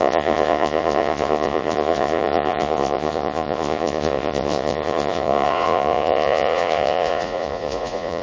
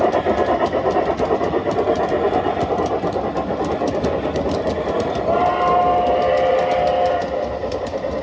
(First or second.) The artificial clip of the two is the first